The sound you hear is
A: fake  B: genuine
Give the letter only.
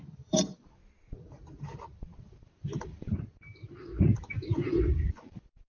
A